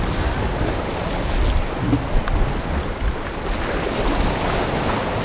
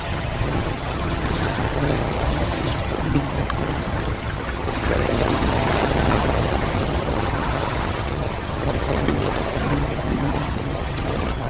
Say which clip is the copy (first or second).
second